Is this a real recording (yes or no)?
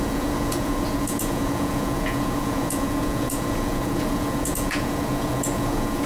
no